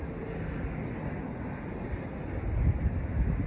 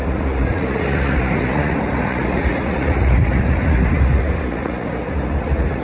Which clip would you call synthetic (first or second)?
second